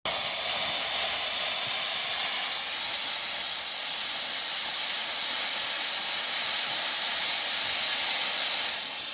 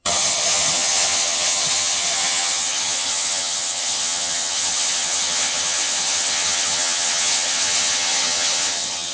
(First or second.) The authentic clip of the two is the first